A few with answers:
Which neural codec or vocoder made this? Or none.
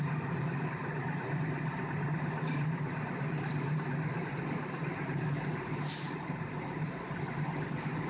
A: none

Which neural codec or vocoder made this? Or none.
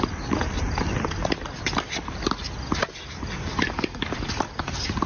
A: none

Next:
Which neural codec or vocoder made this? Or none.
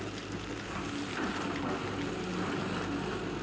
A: none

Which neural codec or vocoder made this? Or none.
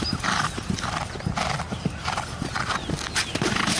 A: none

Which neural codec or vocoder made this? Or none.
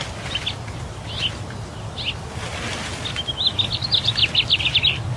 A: none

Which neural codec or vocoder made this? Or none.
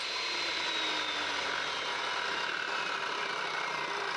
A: none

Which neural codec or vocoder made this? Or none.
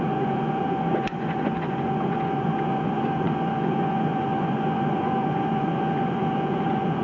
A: vocoder, Vocos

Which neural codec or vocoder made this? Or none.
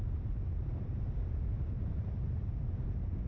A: vocoder, BigVGAN v2